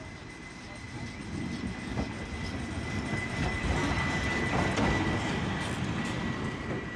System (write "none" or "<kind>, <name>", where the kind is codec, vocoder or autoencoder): none